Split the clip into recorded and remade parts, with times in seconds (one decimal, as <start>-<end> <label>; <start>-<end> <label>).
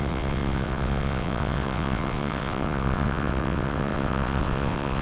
0.0-5.0 remade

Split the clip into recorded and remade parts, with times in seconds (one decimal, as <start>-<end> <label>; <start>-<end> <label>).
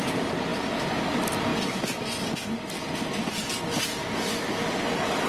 0.0-5.3 recorded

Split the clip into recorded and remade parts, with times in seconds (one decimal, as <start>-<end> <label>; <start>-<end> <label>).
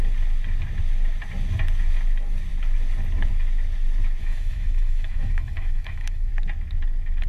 0.0-4.2 recorded; 4.2-6.3 remade; 6.3-7.3 recorded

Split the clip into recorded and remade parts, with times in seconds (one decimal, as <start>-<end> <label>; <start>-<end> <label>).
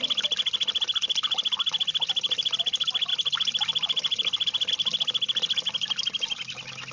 0.0-6.9 recorded